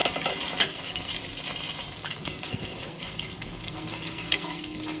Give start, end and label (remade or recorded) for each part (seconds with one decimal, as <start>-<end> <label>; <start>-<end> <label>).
0.0-0.6 recorded; 0.6-1.1 remade; 1.1-1.9 recorded; 1.9-5.0 remade